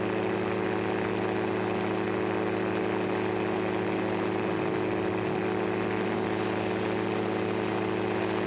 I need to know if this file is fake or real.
real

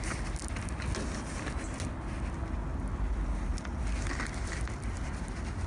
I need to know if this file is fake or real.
real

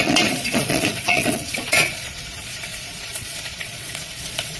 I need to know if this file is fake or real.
fake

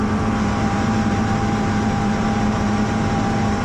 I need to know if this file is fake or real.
fake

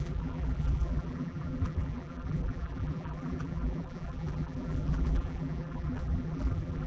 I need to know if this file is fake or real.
fake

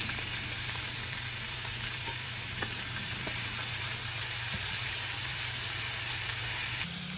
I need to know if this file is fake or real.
fake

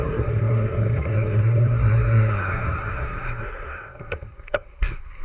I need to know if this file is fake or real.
fake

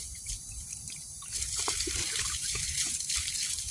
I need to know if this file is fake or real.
fake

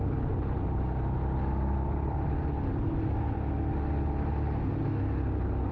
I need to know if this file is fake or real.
real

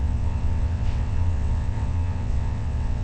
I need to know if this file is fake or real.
fake